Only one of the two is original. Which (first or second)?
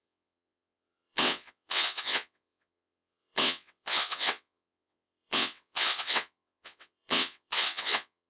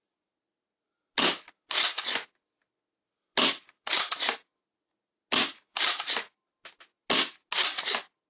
second